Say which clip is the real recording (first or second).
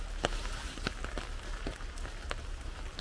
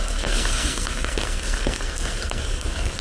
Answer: first